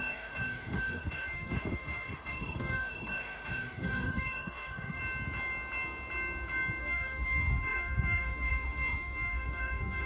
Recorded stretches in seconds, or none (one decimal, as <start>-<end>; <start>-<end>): 5.0-6.8